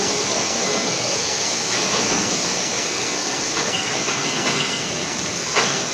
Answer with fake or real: fake